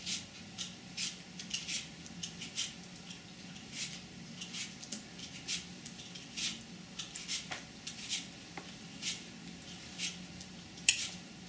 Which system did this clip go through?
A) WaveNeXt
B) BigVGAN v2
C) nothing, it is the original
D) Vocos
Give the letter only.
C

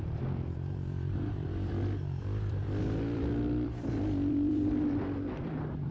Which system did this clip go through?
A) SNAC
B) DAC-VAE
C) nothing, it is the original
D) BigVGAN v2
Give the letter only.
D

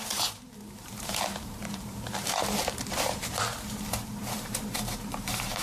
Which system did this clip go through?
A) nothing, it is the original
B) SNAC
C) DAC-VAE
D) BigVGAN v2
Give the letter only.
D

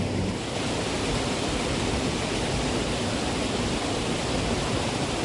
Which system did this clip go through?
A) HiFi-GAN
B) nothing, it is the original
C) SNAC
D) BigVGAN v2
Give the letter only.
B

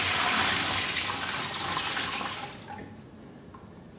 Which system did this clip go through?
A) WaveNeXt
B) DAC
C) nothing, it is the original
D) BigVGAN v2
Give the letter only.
C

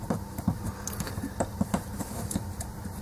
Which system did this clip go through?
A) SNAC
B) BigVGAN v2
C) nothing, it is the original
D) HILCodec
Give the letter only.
B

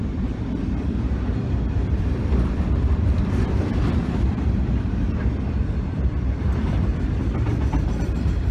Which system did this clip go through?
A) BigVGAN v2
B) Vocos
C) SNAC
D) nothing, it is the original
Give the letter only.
A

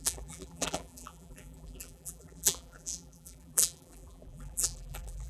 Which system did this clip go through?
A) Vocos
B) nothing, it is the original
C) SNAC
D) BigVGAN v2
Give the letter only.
D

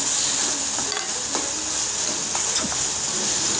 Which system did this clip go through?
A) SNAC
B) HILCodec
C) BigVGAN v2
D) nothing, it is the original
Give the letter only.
D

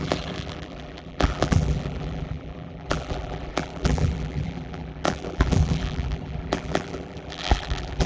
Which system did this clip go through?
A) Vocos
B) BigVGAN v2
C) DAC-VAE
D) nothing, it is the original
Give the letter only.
B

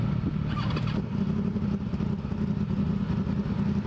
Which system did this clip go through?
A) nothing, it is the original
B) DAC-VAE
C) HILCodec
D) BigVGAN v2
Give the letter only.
A